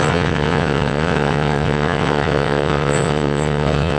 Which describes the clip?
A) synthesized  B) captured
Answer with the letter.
A